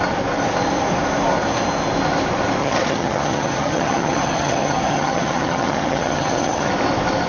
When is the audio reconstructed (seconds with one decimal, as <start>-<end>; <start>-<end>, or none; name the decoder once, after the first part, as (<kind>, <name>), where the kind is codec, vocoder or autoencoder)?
2.6-6.7 (vocoder, HiFi-GAN)